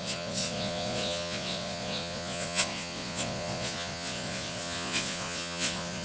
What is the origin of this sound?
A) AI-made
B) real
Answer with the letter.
A